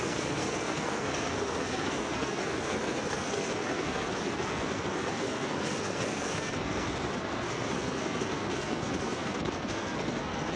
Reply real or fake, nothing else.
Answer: fake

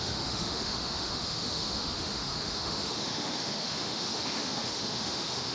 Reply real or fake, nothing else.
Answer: fake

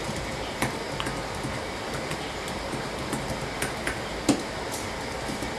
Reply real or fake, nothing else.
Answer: real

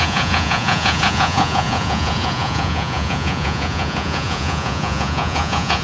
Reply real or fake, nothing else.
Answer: fake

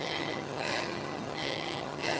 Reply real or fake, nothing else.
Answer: fake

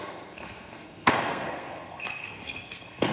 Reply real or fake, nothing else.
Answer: fake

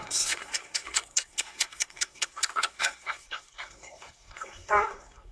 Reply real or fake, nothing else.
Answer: fake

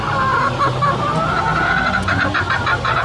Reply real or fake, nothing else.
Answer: real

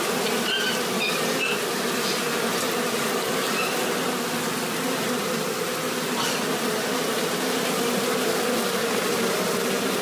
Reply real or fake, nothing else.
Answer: real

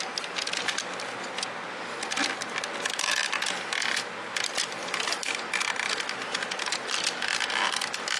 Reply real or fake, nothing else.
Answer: real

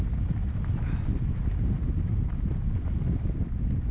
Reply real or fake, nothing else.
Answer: real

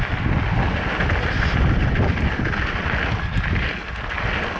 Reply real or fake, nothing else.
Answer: real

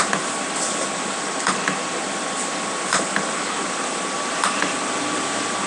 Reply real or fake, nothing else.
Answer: real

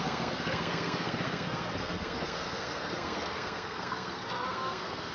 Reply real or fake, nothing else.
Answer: fake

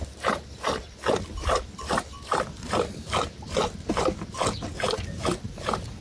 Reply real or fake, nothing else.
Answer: real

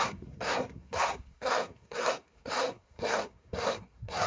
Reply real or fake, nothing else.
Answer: fake